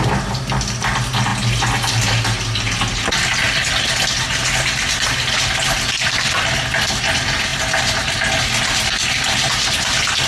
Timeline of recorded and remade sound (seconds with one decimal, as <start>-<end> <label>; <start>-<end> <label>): 0.0-10.3 recorded